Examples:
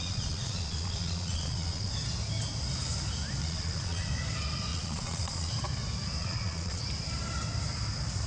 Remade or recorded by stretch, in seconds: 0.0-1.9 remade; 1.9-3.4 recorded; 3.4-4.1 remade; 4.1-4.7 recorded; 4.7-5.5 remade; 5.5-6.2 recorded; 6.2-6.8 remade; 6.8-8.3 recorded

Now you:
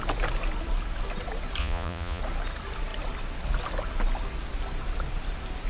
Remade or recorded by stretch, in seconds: 0.0-1.6 recorded; 1.6-2.2 remade; 2.2-5.7 recorded

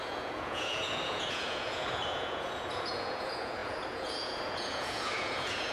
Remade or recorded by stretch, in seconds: 0.0-5.7 remade

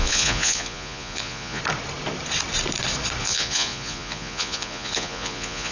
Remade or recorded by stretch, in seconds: 0.0-1.6 remade; 1.6-3.2 recorded; 3.2-5.7 remade

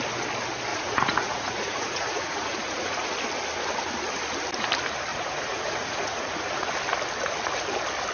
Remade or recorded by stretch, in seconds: 0.0-0.7 recorded; 0.7-3.1 remade; 3.1-5.1 recorded; 5.1-6.7 remade; 6.7-8.1 recorded

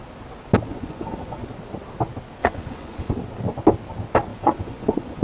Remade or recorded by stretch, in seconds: 0.0-0.7 recorded; 0.7-1.5 remade; 1.5-2.4 recorded; 2.4-3.1 remade; 3.1-4.3 recorded; 4.3-5.2 remade